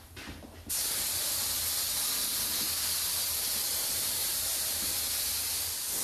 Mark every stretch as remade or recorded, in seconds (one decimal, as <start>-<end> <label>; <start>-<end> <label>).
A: 0.0-4.2 recorded; 4.2-4.9 remade; 4.9-6.0 recorded